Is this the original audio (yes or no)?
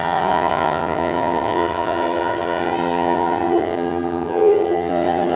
no